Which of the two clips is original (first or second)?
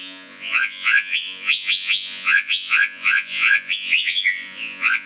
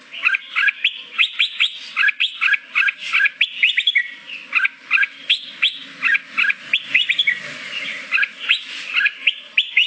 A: second